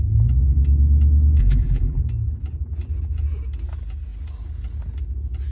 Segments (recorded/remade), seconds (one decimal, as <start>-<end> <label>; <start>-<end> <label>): 0.0-1.4 recorded; 1.4-2.0 remade; 2.0-5.5 recorded